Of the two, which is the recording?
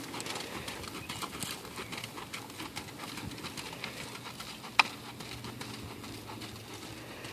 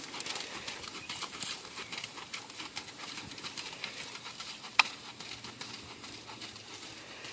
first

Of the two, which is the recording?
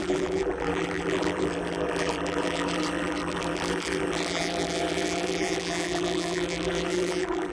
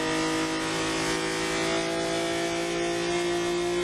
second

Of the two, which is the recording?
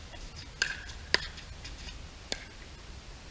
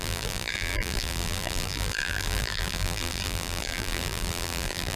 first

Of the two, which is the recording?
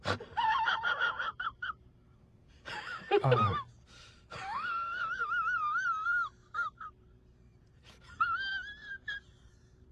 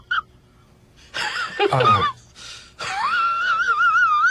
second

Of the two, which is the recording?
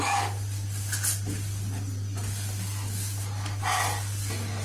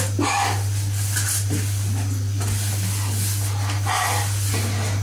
first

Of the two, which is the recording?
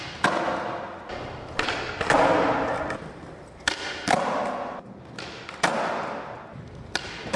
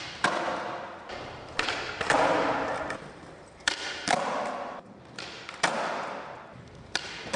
first